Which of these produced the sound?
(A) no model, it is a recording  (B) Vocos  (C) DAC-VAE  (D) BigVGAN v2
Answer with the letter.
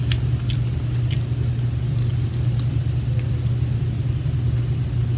A